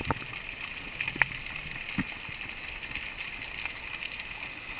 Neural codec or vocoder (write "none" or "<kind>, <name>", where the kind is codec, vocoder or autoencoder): none